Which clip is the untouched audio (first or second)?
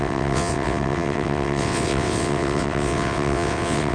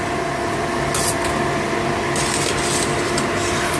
second